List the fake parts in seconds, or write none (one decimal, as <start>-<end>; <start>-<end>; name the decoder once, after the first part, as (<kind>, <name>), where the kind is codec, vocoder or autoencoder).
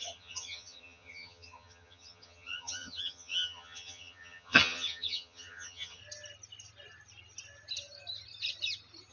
0.0-6.0 (vocoder, HiFi-GAN)